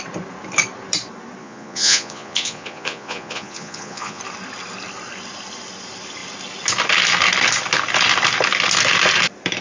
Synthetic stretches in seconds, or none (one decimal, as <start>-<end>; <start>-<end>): 1.4-4.2